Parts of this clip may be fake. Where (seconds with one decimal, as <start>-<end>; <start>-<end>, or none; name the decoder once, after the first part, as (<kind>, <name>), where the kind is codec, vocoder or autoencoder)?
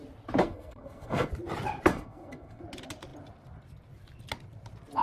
0.4-1.3 (codec, SNAC); 1.9-2.6